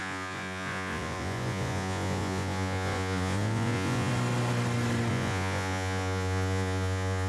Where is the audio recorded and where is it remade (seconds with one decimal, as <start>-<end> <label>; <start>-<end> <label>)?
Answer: 0.0-4.1 remade; 4.1-5.1 recorded; 5.1-7.3 remade